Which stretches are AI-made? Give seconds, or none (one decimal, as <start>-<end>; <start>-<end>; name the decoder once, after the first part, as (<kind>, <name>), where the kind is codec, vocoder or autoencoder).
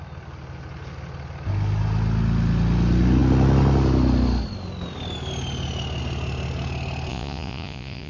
7.1-8.1 (vocoder, Vocos)